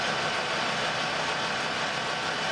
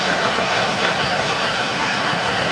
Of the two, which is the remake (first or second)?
second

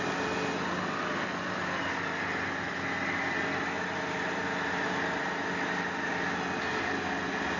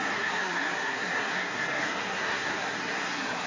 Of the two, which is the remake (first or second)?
second